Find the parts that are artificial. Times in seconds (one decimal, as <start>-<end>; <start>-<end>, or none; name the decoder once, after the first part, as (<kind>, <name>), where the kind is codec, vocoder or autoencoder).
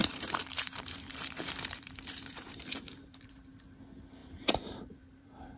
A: 0.0-3.3 (vocoder, BigVGAN v2); 4.2-5.6